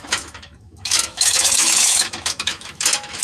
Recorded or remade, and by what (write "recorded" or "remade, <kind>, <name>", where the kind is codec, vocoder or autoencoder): remade, autoencoder, DAC-VAE